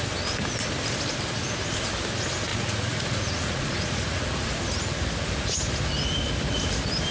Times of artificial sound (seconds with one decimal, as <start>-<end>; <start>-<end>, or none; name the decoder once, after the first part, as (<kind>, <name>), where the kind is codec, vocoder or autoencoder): 2.5-4.6 (vocoder, Vocos)